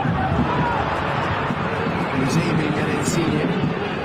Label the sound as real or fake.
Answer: fake